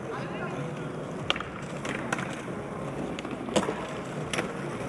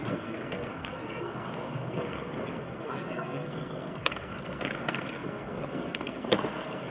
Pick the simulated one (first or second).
second